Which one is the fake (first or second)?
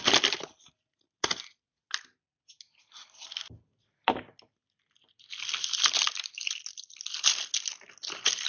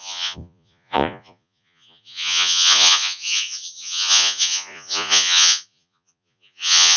second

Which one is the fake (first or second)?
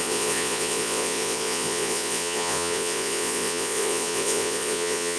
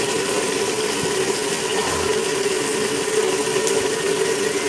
first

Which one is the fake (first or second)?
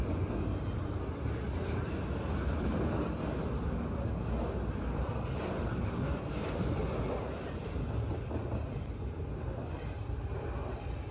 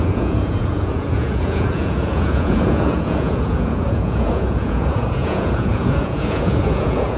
second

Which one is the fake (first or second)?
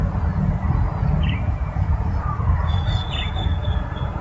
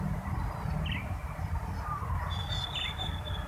first